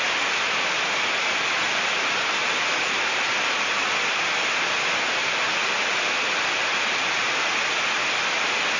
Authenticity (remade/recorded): recorded